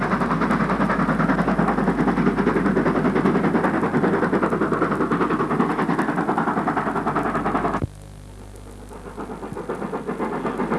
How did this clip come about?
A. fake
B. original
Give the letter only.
B